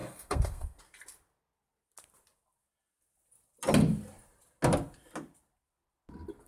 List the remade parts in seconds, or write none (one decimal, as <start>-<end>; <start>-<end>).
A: 0.0-0.8